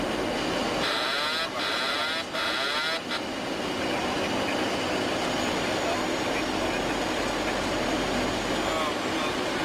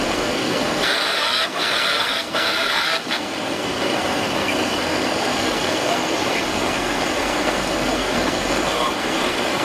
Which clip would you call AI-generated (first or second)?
second